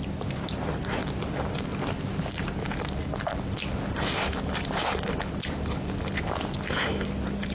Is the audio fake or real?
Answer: real